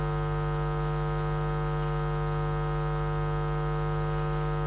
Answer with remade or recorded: recorded